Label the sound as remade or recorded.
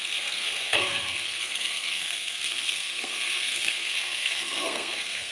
remade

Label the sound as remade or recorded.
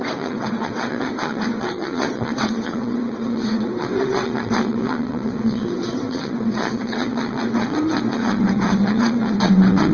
remade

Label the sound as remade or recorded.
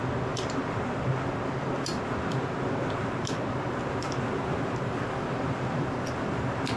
recorded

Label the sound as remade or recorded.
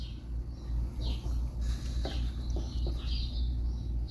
recorded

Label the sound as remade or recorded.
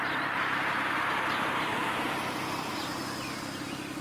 remade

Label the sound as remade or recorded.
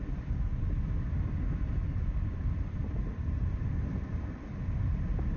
recorded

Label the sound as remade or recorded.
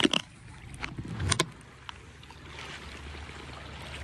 recorded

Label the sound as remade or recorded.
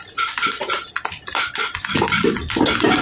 recorded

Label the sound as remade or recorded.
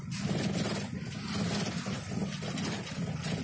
recorded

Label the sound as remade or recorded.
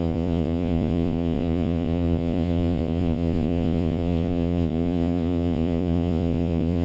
remade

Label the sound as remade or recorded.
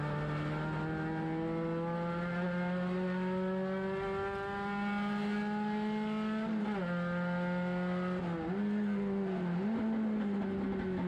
recorded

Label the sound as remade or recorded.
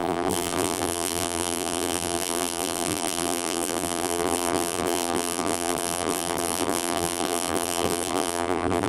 remade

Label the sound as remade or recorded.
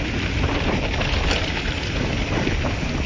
recorded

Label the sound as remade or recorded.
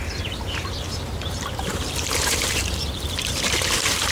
remade